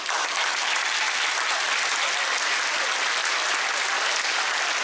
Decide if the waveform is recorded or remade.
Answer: recorded